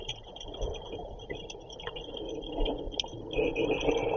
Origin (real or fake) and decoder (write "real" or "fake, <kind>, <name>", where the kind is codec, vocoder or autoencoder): real